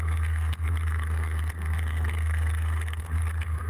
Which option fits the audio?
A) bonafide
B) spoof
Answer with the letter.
B